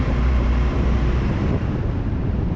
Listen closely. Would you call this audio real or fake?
fake